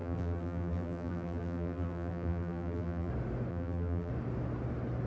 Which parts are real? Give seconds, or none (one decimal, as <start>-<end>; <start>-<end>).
3.1-3.5; 4.1-5.1